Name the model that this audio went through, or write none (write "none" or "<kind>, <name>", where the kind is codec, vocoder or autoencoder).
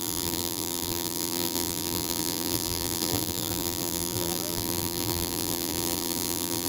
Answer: vocoder, BigVGAN v2